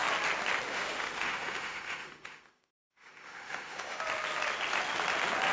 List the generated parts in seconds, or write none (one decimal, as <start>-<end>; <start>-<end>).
0.7-4.0

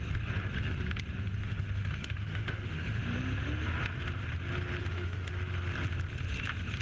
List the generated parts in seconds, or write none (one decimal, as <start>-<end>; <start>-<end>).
1.4-3.0; 4.8-5.3

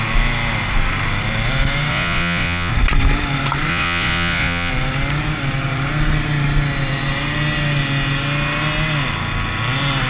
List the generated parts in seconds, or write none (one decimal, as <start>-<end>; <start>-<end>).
1.9-2.7; 3.7-4.7